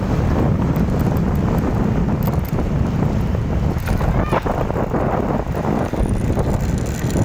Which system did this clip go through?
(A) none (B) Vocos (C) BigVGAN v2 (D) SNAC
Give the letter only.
A